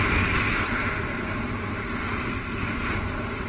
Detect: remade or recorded recorded